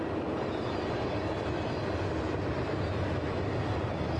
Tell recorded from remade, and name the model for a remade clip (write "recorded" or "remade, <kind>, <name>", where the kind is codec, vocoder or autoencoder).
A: recorded